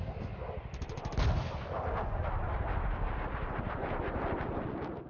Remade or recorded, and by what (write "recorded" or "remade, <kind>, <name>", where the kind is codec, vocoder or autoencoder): recorded